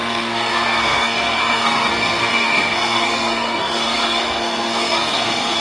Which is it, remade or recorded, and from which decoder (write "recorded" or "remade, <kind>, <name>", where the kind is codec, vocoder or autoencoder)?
remade, codec, SNAC